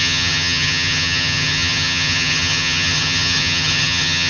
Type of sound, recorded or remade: remade